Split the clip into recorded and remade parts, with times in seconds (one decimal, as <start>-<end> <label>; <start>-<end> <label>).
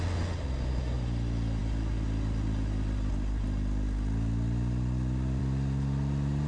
0.0-6.5 recorded